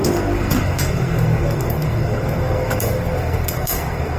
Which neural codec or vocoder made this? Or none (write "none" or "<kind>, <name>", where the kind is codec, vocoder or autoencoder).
codec, SNAC